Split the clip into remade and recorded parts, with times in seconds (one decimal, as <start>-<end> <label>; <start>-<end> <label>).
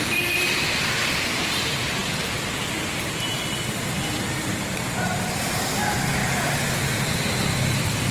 0.0-2.0 remade; 2.0-2.6 recorded; 2.6-8.1 remade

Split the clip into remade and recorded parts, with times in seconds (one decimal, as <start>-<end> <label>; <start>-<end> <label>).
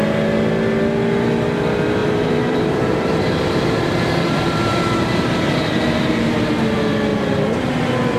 0.0-2.0 recorded; 2.0-6.3 remade; 6.3-7.1 recorded; 7.1-7.6 remade; 7.6-8.2 recorded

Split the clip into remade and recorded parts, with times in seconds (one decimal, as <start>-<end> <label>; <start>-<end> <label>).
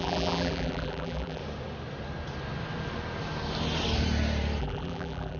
0.0-1.4 remade; 1.4-4.6 recorded; 4.6-5.4 remade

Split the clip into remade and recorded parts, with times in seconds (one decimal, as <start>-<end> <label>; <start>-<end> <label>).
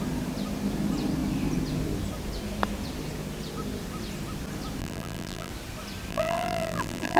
0.0-4.8 recorded; 4.8-5.5 remade; 5.5-6.1 recorded; 6.1-7.2 remade